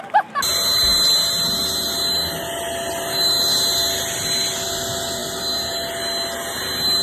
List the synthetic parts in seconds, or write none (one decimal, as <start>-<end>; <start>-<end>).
none